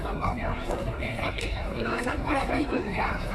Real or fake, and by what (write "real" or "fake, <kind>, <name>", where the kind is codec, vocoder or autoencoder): fake, codec, SNAC